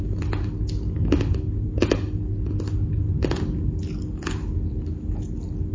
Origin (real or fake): real